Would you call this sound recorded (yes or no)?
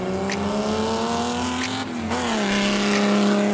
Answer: yes